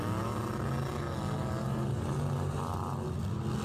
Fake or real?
real